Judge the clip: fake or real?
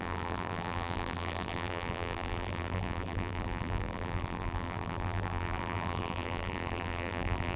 fake